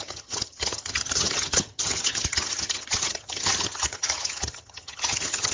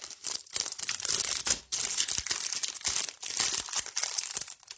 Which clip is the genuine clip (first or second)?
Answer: second